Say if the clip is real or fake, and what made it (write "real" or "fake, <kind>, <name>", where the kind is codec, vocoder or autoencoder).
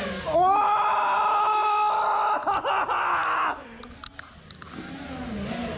real